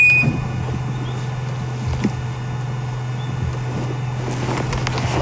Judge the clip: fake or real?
real